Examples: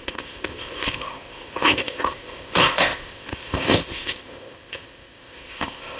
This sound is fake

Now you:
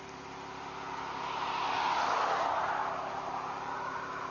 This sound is real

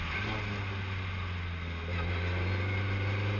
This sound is real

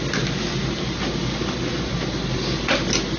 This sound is real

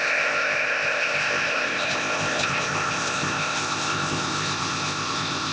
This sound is fake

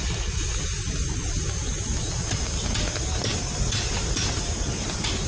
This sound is real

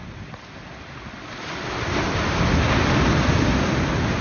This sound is real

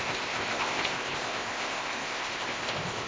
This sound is fake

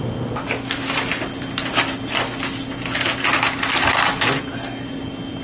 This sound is real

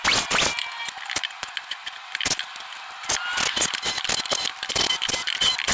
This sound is real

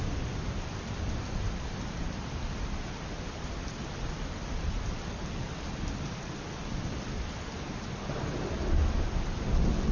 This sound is real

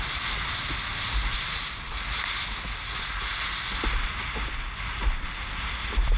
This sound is real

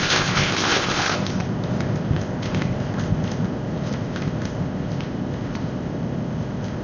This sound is fake